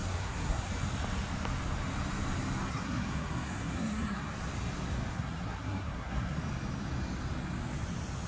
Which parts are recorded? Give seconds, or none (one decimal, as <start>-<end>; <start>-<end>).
0.7-2.7; 4.3-5.1; 6.4-8.3